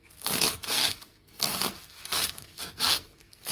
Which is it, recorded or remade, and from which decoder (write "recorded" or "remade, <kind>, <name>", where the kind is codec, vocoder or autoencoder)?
remade, codec, SNAC